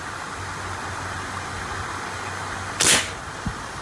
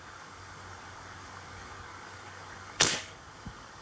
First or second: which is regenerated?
second